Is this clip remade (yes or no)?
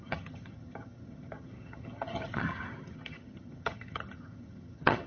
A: yes